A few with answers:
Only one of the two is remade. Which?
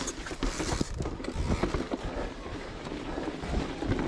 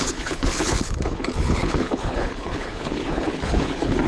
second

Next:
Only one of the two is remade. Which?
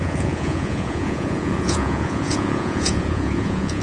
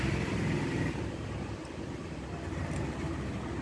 first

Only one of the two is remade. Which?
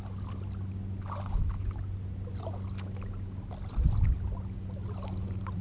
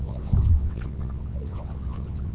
second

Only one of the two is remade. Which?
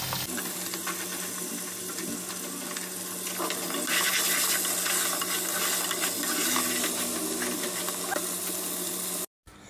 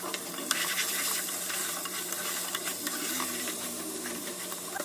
second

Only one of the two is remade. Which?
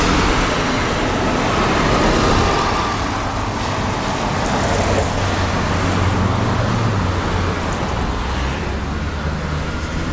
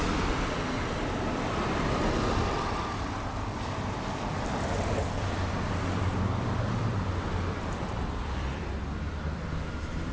second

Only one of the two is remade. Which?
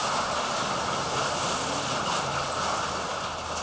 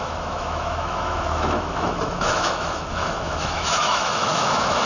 second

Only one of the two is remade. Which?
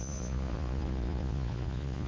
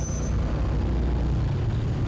first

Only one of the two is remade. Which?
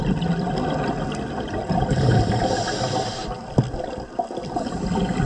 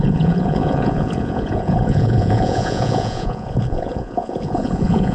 second